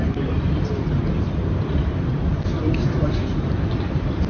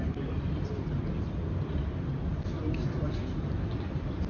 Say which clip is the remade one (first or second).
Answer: first